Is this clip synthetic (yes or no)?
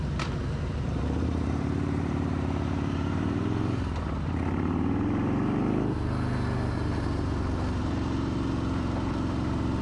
yes